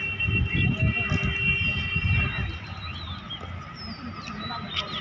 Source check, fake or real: real